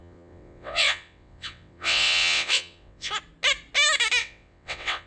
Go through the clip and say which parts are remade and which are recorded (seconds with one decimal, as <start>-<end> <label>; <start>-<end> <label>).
0.0-3.1 remade; 3.1-4.2 recorded; 4.2-5.1 remade